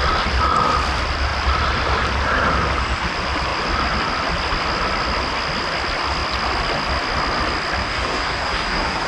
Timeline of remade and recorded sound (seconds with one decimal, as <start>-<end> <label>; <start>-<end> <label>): 0.0-7.8 recorded; 7.8-9.1 remade